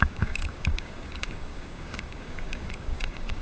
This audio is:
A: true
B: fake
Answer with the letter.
B